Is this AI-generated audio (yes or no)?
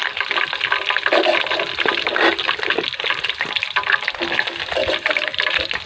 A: no